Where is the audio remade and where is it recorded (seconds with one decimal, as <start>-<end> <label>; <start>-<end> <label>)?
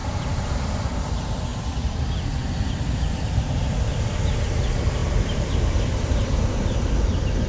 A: 0.0-0.7 remade; 0.7-5.0 recorded; 5.0-7.5 remade